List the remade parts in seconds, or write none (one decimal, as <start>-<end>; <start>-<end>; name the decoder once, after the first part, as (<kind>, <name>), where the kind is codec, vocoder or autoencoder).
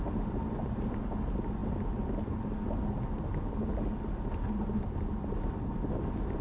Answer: none